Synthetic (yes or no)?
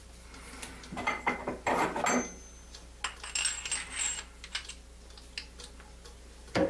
no